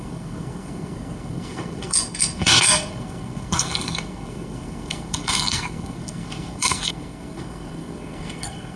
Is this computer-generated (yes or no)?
yes